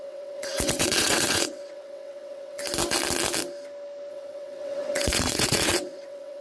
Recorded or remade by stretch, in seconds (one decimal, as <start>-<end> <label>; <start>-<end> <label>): 0.0-2.6 remade; 2.6-4.1 recorded; 4.1-6.4 remade